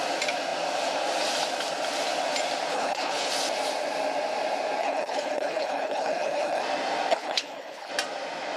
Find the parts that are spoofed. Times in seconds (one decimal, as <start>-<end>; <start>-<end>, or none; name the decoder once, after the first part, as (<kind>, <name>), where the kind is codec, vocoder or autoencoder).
2.7-3.3 (codec, HILCodec); 4.8-6.6; 7.1-7.9